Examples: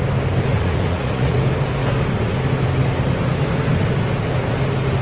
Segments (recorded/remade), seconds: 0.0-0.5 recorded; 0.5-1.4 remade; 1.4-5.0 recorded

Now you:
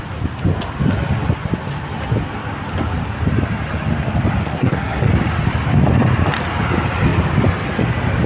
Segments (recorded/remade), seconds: 0.0-4.4 recorded; 4.4-5.1 remade; 5.1-8.3 recorded

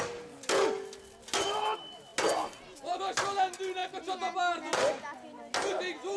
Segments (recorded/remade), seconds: 0.0-6.2 recorded

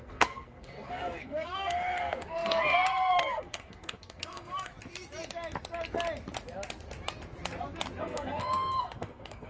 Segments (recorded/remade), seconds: 0.0-4.7 remade; 4.7-8.0 recorded; 8.0-9.5 remade